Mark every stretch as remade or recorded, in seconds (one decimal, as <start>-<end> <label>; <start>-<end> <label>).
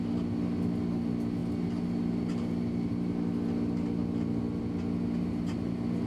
0.0-6.1 recorded